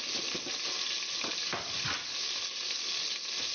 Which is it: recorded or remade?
recorded